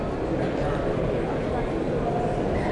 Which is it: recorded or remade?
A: recorded